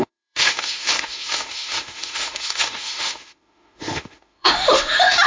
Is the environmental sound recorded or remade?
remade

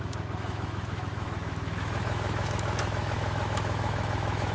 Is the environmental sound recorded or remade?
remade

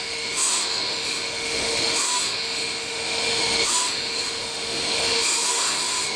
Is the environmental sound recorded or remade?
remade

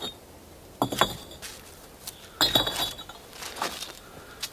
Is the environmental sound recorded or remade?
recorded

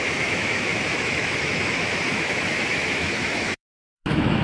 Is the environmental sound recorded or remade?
remade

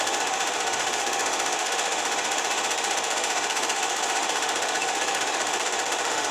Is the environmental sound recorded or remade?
remade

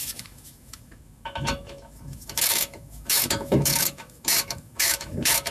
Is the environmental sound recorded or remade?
remade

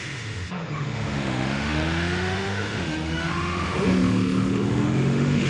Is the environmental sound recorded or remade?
remade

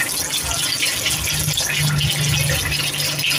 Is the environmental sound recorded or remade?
recorded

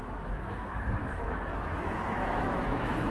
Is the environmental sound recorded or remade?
remade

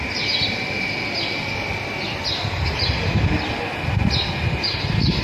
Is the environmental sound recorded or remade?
recorded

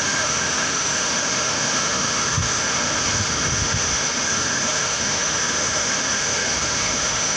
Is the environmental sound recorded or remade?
remade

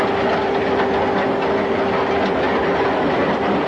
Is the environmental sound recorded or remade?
recorded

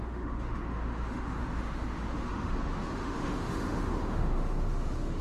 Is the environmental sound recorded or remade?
remade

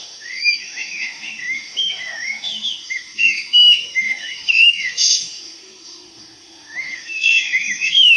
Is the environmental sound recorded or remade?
remade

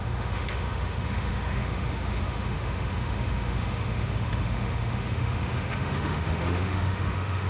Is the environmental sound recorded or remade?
remade